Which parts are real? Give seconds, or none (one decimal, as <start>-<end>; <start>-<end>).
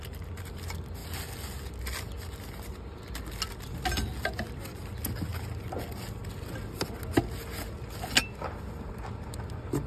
0.0-9.9